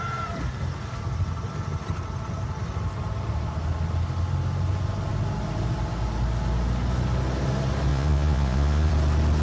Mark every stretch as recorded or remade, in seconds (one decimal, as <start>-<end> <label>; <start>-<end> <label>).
0.0-7.9 recorded; 7.9-8.9 remade; 8.9-9.4 recorded

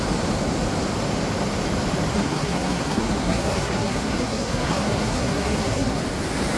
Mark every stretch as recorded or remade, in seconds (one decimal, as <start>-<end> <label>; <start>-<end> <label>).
0.0-2.1 recorded; 2.1-6.0 remade; 6.0-6.6 recorded